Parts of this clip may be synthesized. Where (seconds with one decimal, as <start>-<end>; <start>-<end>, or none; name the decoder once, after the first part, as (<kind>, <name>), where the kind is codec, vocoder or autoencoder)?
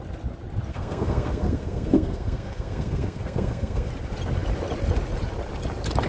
0.7-3.9 (codec, SNAC)